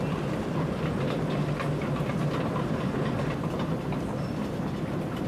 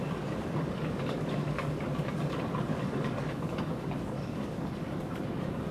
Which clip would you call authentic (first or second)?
first